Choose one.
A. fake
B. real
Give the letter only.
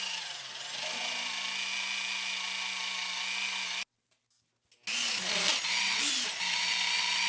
B